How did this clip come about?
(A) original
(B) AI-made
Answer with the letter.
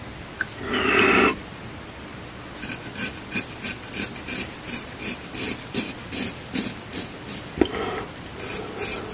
A